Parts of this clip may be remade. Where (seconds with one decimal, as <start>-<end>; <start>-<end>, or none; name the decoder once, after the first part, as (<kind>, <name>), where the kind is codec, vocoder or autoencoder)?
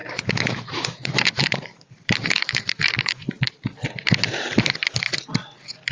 0.0-3.5 (vocoder, BigVGAN v2)